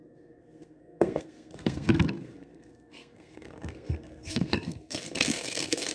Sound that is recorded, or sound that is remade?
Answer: remade